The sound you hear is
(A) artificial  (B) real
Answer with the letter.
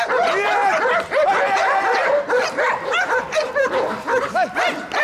A